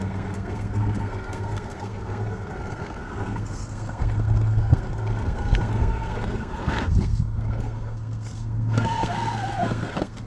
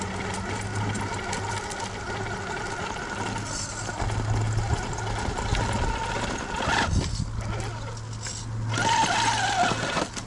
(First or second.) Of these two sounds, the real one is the second